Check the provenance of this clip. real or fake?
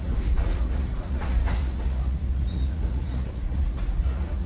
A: fake